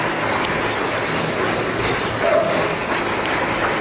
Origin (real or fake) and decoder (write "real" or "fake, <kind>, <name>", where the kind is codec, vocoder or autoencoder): real